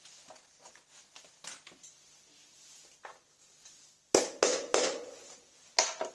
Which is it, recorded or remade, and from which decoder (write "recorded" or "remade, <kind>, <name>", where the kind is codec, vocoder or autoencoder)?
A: recorded